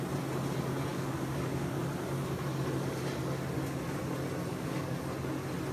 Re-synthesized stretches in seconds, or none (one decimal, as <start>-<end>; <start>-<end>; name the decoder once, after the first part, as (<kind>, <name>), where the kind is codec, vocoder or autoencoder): 0.9-1.8 (codec, DAC); 4.5-5.0